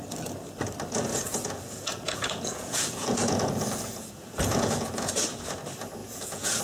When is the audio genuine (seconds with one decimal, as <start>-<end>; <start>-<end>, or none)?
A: 0.0-1.1; 5.1-6.0